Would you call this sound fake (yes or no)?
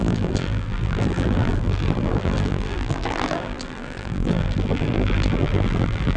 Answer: yes